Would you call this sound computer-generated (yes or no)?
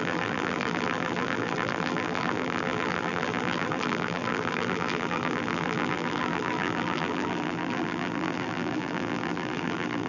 yes